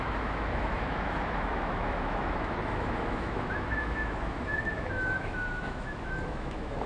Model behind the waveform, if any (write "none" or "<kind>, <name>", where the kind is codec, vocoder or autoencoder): autoencoder, DAC-VAE